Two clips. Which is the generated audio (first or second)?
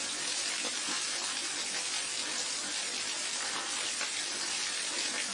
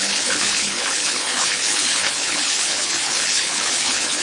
second